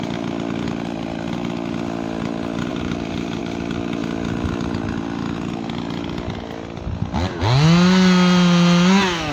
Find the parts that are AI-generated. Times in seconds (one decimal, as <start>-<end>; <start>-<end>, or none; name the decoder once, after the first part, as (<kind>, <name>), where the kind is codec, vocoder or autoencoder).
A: 2.7-3.4 (vocoder, BigVGAN v2)